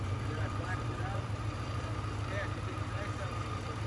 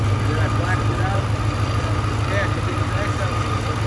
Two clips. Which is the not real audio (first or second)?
first